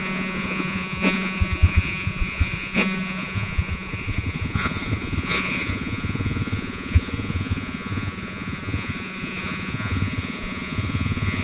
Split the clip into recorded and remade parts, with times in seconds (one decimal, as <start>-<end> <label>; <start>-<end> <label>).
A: 0.0-11.4 remade